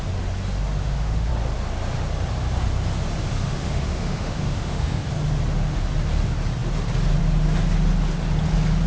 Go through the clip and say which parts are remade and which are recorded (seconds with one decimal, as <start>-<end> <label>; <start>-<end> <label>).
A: 0.0-0.8 recorded; 0.8-1.3 remade; 1.3-3.4 recorded; 3.4-5.1 remade; 5.1-8.9 recorded